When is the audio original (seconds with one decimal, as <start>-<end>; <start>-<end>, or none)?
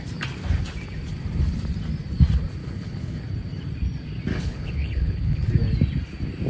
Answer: 0.0-2.6; 3.2-4.3; 5.5-6.5